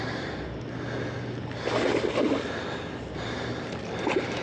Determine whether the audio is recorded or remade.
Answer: recorded